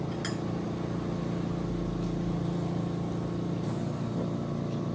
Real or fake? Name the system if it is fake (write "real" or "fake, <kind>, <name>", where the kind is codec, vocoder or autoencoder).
real